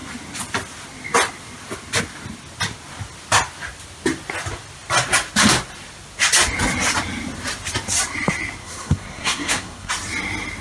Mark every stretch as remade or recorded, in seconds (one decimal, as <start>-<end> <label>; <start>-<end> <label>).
0.0-8.6 recorded; 8.6-9.9 remade; 9.9-10.6 recorded